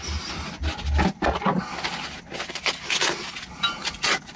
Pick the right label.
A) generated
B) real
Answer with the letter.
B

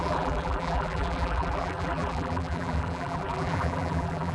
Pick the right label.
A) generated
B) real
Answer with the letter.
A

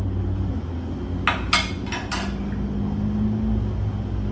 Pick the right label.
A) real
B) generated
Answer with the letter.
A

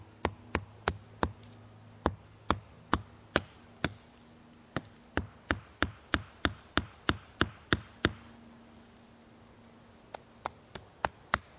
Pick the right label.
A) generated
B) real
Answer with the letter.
B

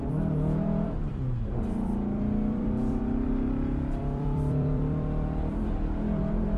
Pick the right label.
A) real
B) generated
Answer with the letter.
B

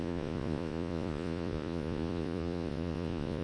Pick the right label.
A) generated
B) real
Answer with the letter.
A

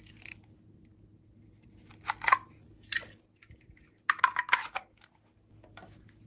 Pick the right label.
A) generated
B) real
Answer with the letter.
B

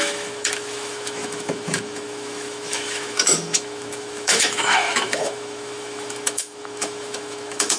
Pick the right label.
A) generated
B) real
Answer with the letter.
A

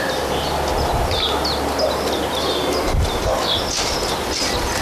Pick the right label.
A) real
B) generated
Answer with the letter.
A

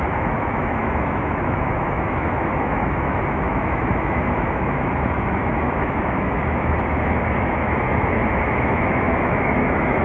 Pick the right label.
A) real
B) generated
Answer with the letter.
B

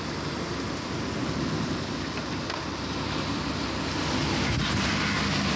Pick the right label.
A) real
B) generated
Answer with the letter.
A